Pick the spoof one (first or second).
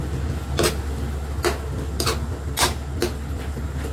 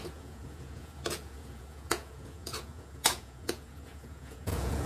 second